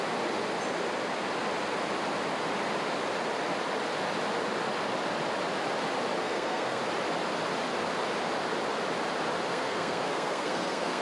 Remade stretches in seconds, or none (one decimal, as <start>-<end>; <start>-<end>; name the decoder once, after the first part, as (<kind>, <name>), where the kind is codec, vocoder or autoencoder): 6.2-6.8 (codec, SNAC); 9.5-11.0